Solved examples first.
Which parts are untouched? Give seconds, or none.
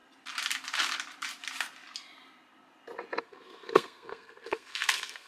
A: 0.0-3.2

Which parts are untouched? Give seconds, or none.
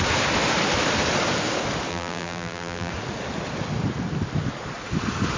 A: 0.0-1.9; 2.9-5.4